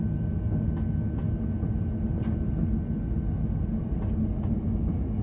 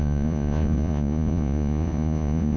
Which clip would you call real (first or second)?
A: first